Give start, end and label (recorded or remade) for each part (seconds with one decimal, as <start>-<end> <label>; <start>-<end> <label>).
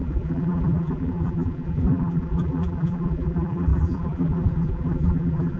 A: 0.0-5.6 remade